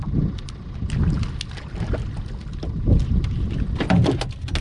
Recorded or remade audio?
recorded